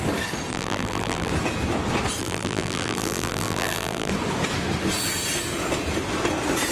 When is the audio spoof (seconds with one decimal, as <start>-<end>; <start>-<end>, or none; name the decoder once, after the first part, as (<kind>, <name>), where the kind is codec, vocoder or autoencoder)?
0.5-1.3 (vocoder, BigVGAN v2); 2.2-4.1